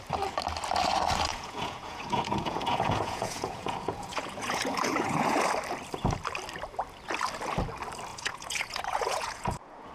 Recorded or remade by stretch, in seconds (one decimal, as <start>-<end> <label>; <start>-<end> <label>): 0.0-1.3 recorded; 1.3-5.4 remade; 5.4-8.1 recorded; 8.1-9.9 remade

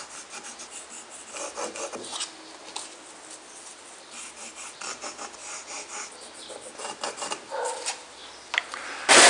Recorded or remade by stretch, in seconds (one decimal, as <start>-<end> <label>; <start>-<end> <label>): 0.0-9.3 recorded